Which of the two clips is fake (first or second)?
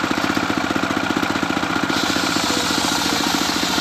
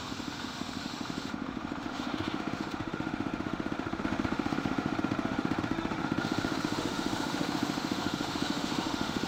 second